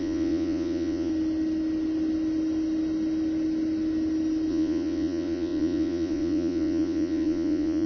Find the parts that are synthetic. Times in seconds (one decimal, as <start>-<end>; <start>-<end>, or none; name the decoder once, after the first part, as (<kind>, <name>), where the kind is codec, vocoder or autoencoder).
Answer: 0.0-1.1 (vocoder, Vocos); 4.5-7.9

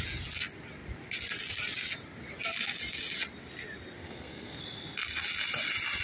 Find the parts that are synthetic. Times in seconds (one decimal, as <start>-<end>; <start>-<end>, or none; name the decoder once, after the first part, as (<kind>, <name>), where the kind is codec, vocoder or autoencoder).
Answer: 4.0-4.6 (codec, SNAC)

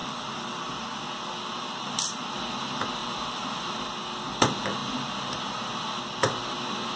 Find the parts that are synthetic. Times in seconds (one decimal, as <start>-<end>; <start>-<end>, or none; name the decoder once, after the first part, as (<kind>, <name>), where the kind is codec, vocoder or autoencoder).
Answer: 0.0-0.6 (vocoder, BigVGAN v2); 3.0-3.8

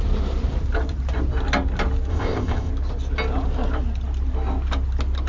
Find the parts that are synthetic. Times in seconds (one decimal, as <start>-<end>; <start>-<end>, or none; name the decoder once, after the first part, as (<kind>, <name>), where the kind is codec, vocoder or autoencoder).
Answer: 2.1-2.7 (codec, ZipCodec)

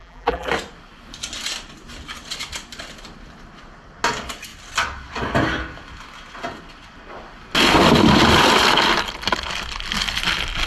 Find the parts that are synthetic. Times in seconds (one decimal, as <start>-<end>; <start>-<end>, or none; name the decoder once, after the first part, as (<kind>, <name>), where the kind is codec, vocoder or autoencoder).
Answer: 0.0-0.5 (vocoder, BigVGAN v2)

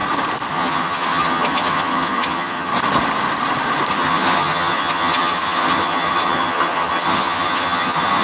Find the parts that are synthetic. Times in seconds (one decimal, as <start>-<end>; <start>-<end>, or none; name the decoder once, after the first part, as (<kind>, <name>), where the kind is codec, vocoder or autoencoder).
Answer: 0.5-2.7 (vocoder, HiFi-GAN); 3.9-8.2

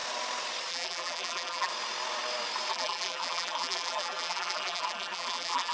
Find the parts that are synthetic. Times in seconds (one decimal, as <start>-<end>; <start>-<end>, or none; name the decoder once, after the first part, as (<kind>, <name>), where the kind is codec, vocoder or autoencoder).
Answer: 0.7-1.7 (vocoder, BigVGAN v2); 2.7-5.7

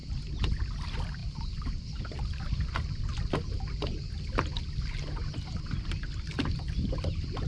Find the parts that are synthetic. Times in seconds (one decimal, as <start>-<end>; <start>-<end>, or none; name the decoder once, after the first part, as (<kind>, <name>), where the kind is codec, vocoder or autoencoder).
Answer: none